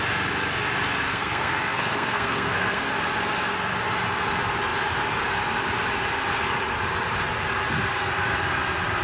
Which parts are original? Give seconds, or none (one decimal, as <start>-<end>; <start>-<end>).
0.0-1.1; 2.9-9.0